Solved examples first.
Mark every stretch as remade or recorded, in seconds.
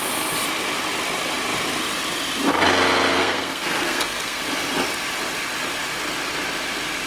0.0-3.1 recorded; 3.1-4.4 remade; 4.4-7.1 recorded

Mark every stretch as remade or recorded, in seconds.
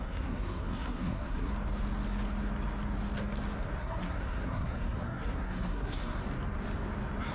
0.0-1.5 remade; 1.5-3.8 recorded; 3.8-6.2 remade; 6.2-7.3 recorded